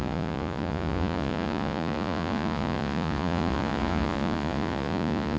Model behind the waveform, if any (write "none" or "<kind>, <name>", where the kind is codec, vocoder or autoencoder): vocoder, Vocos